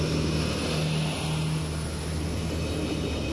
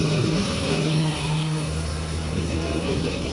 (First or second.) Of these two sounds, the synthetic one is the second